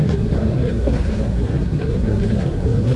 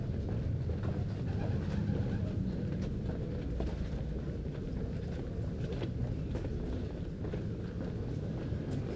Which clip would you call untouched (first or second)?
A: second